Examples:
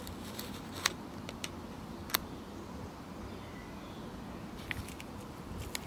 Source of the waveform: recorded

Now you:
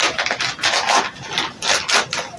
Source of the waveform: recorded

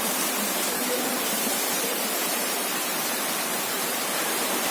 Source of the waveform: remade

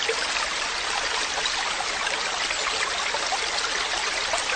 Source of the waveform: recorded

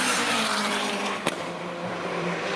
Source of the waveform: remade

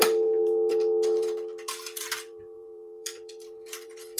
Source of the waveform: remade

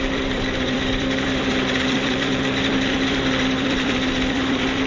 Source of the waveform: remade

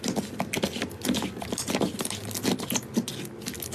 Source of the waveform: recorded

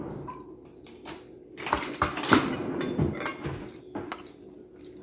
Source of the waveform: recorded